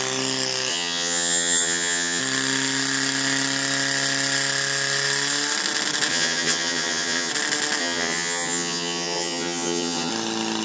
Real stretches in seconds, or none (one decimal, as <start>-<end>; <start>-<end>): 0.0-0.7; 2.2-6.1; 7.3-7.8; 10.1-10.6

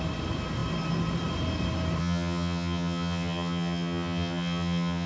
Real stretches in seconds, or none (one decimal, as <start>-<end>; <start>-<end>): 0.0-2.0

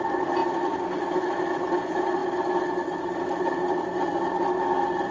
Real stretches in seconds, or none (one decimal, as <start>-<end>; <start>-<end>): 0.0-5.1

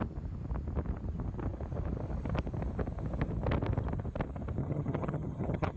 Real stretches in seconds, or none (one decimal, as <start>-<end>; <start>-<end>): 0.0-4.6

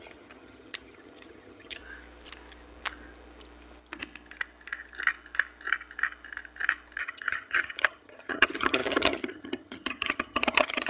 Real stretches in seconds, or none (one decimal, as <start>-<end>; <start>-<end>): 1.8-7.0

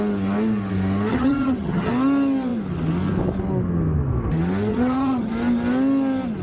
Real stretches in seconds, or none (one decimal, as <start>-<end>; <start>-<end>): 0.0-1.1; 1.9-4.7; 5.3-6.4

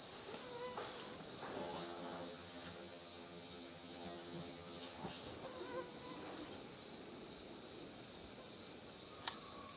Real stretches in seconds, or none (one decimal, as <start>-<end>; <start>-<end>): 0.0-1.6; 5.2-9.8

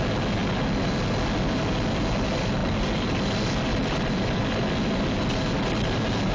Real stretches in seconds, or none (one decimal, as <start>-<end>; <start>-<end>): 0.0-6.3